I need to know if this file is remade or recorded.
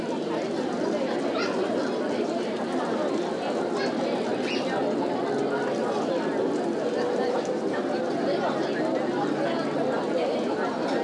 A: recorded